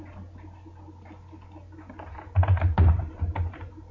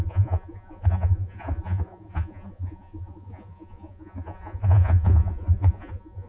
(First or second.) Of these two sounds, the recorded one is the first